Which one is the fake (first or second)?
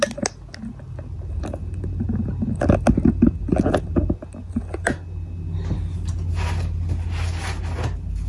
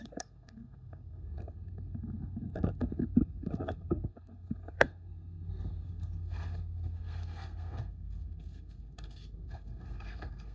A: second